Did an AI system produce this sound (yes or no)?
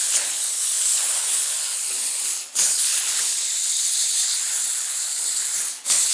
yes